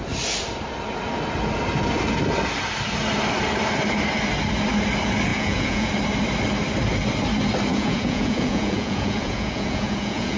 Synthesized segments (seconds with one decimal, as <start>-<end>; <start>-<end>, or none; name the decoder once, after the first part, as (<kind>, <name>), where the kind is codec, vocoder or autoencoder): 5.3-5.9 (vocoder, Vocos); 7.7-10.4

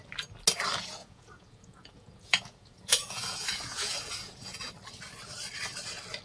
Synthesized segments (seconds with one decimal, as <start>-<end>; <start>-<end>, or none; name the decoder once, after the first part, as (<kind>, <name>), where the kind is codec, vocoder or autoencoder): 1.0-4.7 (vocoder, Vocos)

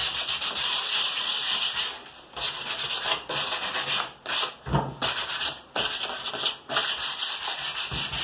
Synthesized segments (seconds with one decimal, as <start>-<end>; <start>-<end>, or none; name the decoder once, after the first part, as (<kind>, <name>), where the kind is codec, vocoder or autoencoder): none

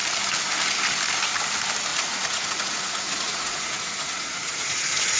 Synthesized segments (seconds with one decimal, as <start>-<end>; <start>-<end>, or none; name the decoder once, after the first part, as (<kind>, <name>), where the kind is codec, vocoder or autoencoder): 1.9-5.2 (vocoder, Vocos)

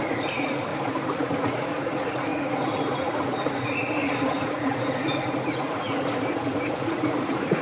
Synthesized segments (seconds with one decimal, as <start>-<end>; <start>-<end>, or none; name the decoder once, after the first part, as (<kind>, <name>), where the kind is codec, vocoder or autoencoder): 0.0-0.7 (vocoder, Vocos); 1.3-7.6